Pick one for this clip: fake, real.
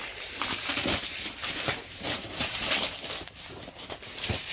fake